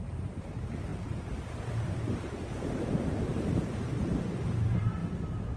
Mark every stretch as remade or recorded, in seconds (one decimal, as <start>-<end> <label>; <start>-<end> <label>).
0.0-5.0 remade; 5.0-5.6 recorded